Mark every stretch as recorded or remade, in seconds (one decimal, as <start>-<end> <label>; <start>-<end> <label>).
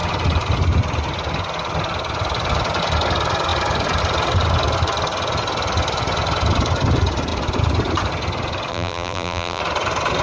0.0-8.7 recorded; 8.7-9.6 remade; 9.6-10.2 recorded